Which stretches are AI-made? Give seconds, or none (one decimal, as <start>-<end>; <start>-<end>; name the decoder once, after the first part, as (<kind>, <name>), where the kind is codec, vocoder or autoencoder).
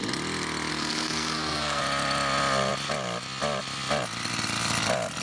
0.7-1.8 (codec, SNAC)